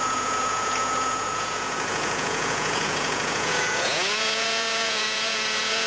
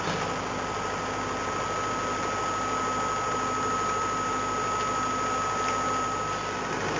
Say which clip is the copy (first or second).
first